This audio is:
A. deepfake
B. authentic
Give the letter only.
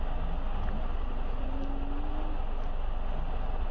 B